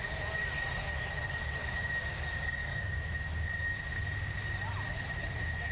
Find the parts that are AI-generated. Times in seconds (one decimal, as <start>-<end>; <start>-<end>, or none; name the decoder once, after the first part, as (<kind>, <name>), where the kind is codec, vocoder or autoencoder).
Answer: 1.6-3.4 (codec, DAC)